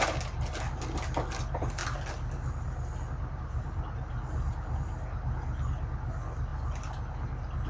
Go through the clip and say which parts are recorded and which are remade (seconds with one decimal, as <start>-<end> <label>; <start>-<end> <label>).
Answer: 0.0-7.7 recorded